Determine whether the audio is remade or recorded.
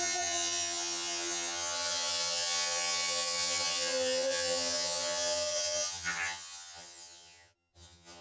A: remade